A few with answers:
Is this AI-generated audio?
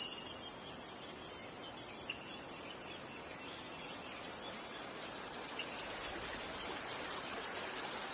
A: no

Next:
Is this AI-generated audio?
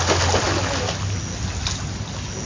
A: no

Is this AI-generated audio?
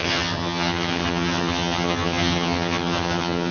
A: yes